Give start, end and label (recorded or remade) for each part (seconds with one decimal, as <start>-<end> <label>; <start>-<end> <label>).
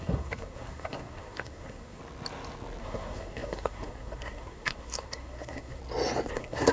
0.0-2.0 remade; 2.0-2.8 recorded; 2.8-5.8 remade; 5.8-6.3 recorded; 6.3-6.7 remade